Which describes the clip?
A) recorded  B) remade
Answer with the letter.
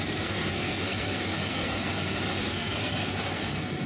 B